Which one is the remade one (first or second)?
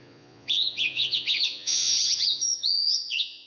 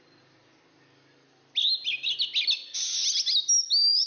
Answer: first